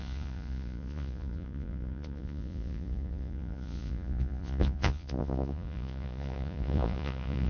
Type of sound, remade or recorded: remade